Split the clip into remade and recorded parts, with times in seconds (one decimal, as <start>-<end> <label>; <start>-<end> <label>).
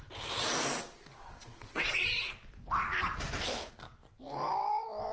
0.0-1.2 recorded; 1.2-2.2 remade; 2.2-5.1 recorded